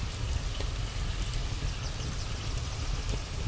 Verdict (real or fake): real